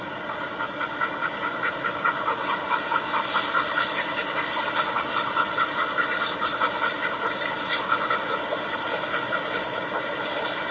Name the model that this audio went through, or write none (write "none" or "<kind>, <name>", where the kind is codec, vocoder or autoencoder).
none